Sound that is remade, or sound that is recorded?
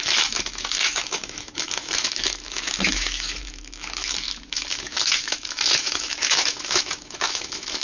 remade